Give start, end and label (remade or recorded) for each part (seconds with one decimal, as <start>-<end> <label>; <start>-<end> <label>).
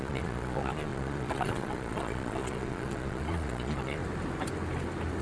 0.0-4.0 remade; 4.0-5.2 recorded